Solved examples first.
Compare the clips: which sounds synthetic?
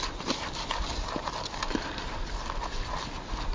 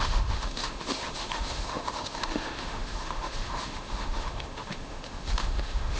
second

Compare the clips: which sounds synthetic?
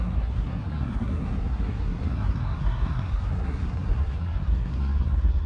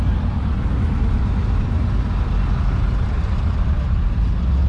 first